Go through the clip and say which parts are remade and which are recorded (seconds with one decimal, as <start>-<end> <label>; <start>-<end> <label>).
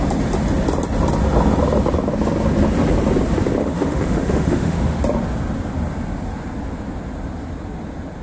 0.0-3.6 recorded; 3.6-5.0 remade; 5.0-8.2 recorded